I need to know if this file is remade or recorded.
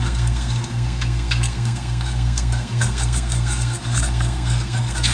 remade